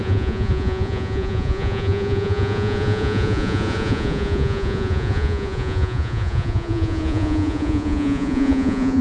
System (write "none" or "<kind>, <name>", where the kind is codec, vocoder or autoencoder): vocoder, Vocos